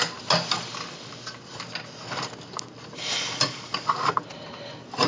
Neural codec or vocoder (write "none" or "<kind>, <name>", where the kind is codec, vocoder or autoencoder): none